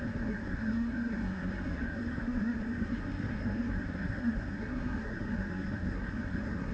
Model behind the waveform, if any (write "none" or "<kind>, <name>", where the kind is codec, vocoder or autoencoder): codec, SNAC